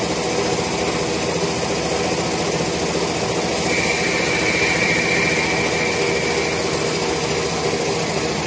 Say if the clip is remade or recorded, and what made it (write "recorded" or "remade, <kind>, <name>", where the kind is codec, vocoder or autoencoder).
recorded